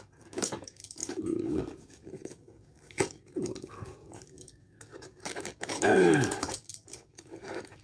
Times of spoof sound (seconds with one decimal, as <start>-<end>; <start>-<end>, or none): 0.0-7.8